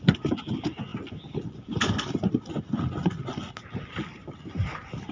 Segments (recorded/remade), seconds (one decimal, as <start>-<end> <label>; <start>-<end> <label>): 0.0-5.1 recorded